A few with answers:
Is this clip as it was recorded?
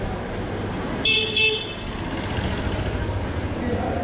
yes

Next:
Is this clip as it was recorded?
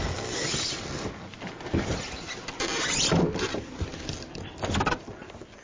yes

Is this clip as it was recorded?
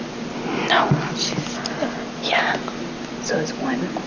yes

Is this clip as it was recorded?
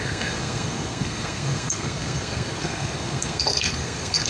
no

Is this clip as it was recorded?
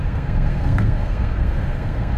no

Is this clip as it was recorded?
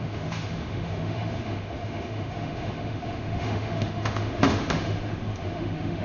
no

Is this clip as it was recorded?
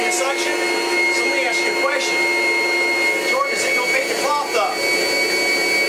yes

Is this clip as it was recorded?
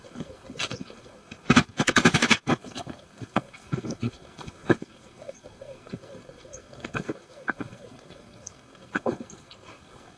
no